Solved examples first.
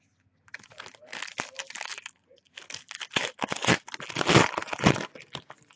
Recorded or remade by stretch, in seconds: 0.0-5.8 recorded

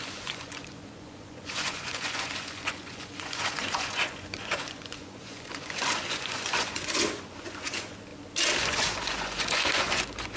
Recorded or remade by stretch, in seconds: 0.0-8.1 remade; 8.1-8.6 recorded; 8.6-10.4 remade

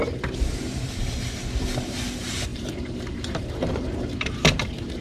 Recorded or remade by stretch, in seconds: 0.0-2.5 recorded; 2.5-4.4 remade; 4.4-5.0 recorded